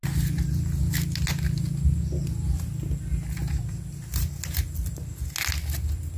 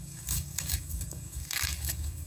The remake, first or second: second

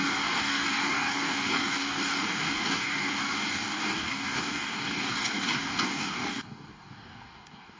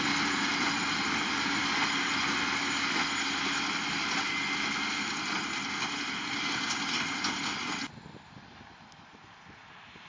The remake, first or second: first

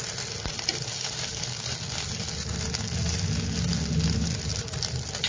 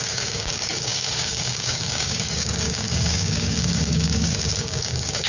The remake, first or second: second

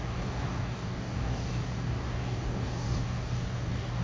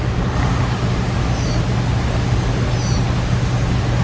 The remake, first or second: first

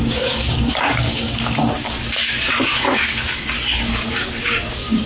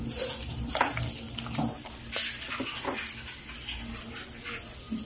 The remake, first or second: first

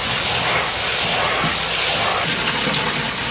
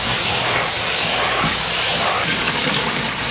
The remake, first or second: second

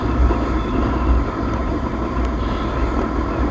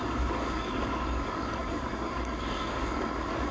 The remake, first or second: second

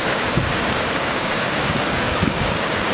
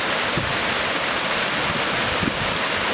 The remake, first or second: first